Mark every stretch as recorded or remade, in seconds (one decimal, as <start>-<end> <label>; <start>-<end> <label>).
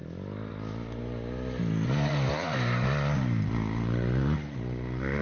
0.0-5.2 recorded